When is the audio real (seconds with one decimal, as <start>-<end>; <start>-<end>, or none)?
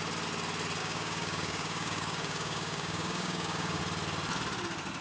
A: 0.0-0.8; 3.8-5.0